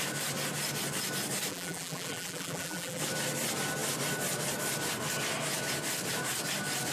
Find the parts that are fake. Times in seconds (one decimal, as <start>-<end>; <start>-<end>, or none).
1.5-3.0